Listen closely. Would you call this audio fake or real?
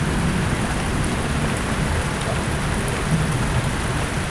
real